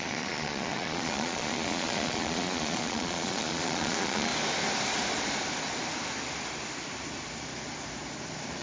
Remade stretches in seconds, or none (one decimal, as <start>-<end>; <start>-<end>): 0.0-4.3